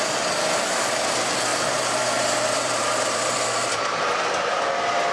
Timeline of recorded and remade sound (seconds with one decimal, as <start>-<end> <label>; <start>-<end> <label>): 0.0-1.5 recorded; 1.5-3.8 remade; 3.8-5.1 recorded